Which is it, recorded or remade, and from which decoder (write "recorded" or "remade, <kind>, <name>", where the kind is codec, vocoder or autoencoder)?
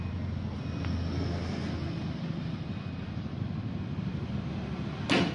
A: recorded